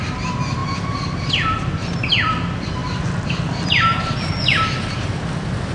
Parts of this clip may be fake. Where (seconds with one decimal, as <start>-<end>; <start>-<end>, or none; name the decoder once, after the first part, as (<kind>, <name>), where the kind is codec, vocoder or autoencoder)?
none